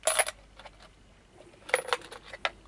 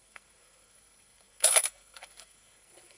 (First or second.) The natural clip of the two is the first